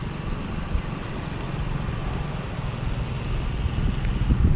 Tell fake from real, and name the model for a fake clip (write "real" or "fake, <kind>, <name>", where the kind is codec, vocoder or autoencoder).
real